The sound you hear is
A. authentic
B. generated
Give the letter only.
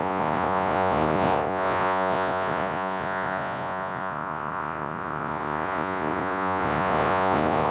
B